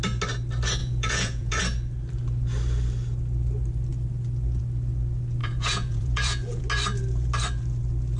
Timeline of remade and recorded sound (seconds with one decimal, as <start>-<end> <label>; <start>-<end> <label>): 0.0-0.8 recorded; 0.8-1.6 remade; 1.6-5.4 recorded; 5.4-6.6 remade; 6.6-8.2 recorded